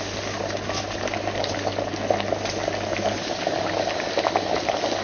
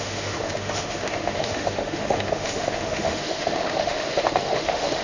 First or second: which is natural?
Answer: first